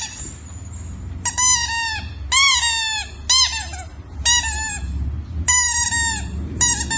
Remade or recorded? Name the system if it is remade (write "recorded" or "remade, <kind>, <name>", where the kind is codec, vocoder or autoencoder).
recorded